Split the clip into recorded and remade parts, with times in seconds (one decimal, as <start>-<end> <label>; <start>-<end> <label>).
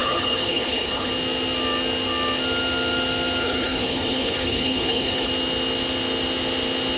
0.0-1.1 remade; 1.1-3.4 recorded; 3.4-5.3 remade; 5.3-7.0 recorded